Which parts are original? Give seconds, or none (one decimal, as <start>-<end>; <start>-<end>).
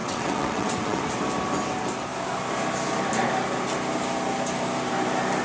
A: 1.0-5.4